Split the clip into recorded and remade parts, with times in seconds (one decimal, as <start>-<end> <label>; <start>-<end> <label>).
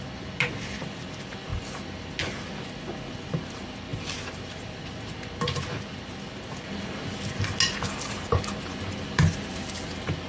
0.0-10.3 recorded